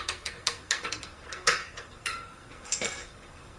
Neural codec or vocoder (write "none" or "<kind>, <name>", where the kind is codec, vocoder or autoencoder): codec, SNAC